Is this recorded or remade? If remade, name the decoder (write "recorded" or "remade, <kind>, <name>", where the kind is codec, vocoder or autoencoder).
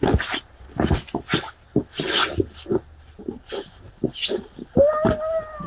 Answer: recorded